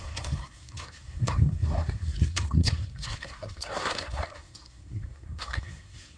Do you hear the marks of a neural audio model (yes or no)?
yes